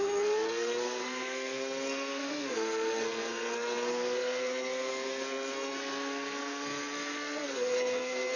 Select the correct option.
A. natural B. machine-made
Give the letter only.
B